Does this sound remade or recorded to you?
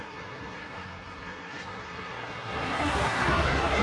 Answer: remade